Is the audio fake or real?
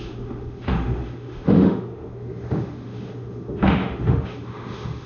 fake